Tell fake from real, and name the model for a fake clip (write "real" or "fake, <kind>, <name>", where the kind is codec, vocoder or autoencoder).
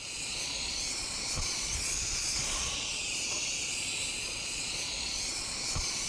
fake, vocoder, Vocos